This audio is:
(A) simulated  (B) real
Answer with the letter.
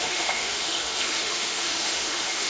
A